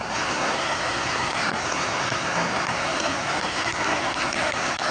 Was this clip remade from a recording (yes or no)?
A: yes